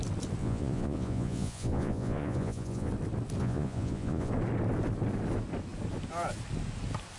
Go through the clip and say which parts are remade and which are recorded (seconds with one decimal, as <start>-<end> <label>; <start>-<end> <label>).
0.0-0.4 recorded; 0.4-2.9 remade; 2.9-3.4 recorded; 3.4-4.3 remade; 4.3-7.2 recorded